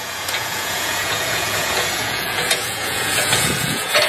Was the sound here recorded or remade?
remade